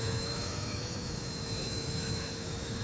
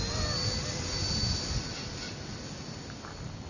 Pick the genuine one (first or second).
second